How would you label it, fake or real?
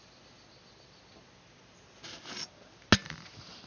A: real